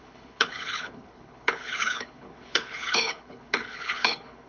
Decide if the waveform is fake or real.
fake